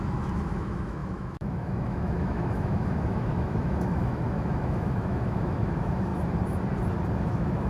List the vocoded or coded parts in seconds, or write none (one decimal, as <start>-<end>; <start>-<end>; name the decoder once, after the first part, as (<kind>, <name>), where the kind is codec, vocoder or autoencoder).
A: 0.0-6.1 (autoencoder, DAC-VAE); 7.1-7.7